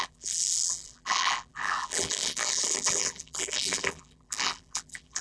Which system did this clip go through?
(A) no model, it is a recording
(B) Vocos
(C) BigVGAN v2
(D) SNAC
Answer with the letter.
C